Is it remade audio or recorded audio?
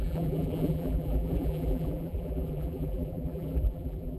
remade